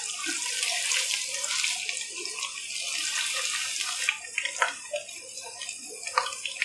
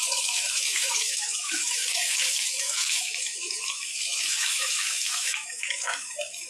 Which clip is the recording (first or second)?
first